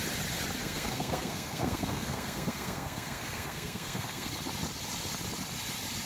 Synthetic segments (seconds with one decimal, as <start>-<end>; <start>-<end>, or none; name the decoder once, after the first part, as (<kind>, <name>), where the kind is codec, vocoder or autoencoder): 0.6-4.3 (codec, SNAC)